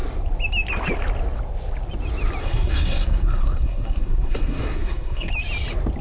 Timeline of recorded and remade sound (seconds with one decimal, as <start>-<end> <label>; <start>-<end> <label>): 0.0-2.4 recorded; 2.4-5.3 remade; 5.3-6.0 recorded